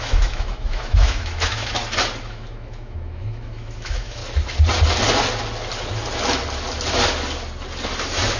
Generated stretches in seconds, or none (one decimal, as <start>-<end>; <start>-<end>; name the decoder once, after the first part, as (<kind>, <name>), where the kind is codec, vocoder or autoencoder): 0.0-1.8 (autoencoder, DAC-VAE); 2.3-4.2